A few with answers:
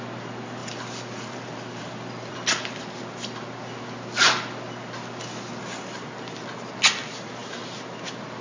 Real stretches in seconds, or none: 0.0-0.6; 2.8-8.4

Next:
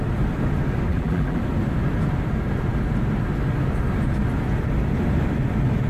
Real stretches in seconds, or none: 0.0-0.9; 1.4-5.9

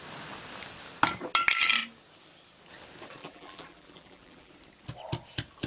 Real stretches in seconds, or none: 0.0-3.2; 4.5-5.7

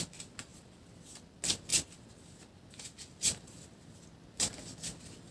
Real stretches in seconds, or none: 0.0-5.3

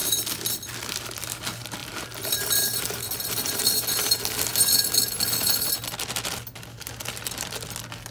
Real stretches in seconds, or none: 1.3-1.8; 3.7-8.1

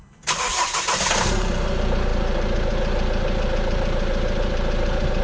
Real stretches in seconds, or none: none